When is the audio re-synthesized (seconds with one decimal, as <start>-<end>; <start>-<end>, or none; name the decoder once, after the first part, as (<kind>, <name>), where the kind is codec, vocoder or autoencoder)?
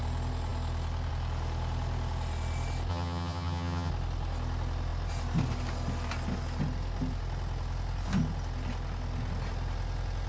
2.9-3.9 (vocoder, HiFi-GAN)